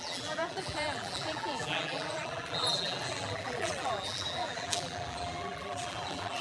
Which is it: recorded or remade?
remade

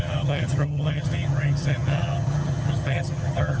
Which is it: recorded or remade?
remade